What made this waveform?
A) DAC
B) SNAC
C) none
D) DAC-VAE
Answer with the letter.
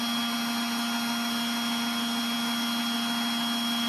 C